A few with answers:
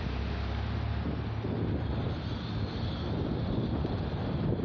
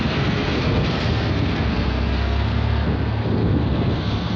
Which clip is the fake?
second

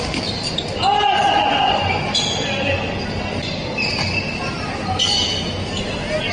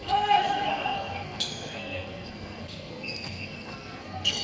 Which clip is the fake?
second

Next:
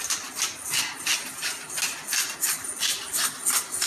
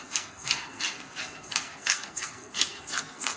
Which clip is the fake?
second